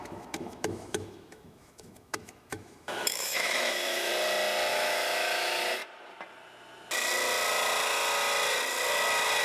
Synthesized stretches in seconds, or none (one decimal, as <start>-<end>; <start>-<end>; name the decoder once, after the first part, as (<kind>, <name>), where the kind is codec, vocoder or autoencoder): 0.0-4.1 (autoencoder, DAC-VAE); 4.7-5.8